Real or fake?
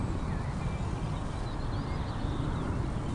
real